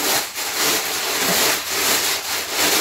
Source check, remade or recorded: recorded